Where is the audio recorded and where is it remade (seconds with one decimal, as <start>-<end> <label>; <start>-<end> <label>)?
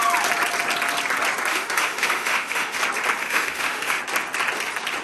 0.0-1.5 recorded; 1.5-2.8 remade; 2.8-3.2 recorded; 3.2-4.0 remade; 4.0-5.0 recorded